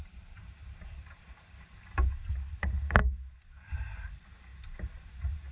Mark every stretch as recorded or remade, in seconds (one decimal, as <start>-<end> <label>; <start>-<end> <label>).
0.0-3.0 remade; 3.0-3.7 recorded; 3.7-4.5 remade; 4.5-5.0 recorded; 5.0-5.5 remade